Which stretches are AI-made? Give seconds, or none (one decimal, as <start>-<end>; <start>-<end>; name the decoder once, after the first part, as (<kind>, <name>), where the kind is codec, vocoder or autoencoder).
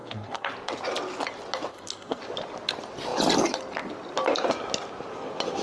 0.0-0.5 (codec, SNAC); 1.7-2.2